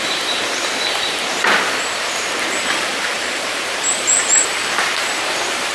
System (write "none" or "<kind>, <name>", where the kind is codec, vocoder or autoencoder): vocoder, BigVGAN v2